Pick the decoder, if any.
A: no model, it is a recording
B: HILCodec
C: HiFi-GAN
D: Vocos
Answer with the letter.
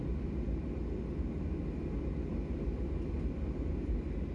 A